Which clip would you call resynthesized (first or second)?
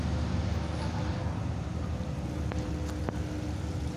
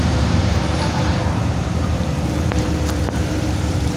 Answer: second